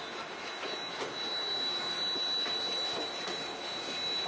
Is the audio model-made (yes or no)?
no